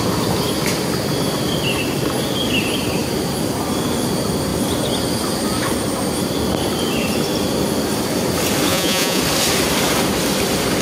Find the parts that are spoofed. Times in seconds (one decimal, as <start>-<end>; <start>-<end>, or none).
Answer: 8.7-9.2